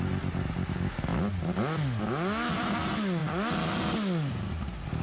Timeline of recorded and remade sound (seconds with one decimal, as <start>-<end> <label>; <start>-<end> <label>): 0.0-5.0 recorded